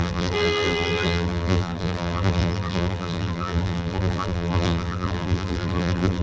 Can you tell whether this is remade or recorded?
remade